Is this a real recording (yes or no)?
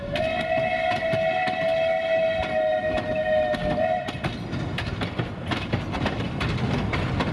yes